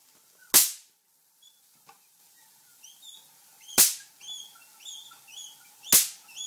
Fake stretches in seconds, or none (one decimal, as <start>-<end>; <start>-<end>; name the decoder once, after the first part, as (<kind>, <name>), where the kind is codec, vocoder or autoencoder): 0.6-2.2 (vocoder, BigVGAN v2); 2.7-4.1